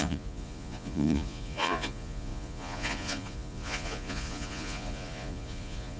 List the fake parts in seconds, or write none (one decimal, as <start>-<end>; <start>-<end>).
0.0-6.0